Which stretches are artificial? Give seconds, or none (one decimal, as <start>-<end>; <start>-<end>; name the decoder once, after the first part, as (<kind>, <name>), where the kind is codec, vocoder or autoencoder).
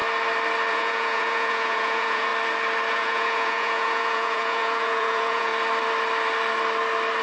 0.7-2.3 (vocoder, Vocos); 2.9-5.5